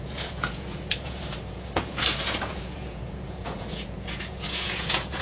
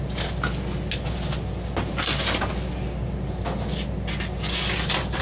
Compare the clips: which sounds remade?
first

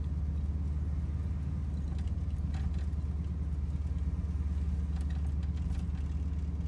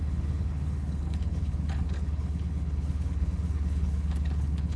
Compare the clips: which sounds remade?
second